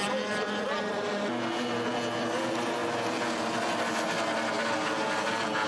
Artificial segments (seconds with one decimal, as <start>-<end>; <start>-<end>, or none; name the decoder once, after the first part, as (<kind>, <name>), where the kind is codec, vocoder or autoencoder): none